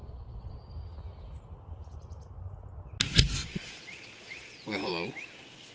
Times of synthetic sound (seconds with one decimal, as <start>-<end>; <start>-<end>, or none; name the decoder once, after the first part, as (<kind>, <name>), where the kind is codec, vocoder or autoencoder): 0.0-0.6 (vocoder, Vocos); 3.4-4.9